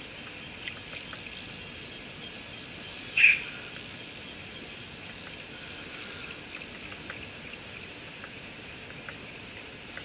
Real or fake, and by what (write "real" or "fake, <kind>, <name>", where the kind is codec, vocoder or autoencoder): real